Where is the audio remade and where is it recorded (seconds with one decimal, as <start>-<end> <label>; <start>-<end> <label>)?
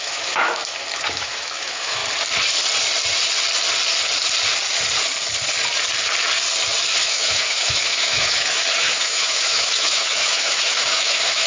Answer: 0.0-0.6 remade; 0.6-1.1 recorded; 1.1-2.0 remade; 2.0-7.0 recorded; 7.0-11.5 remade